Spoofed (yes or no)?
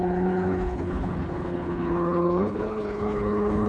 yes